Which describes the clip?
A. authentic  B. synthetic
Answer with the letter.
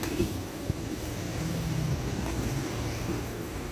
B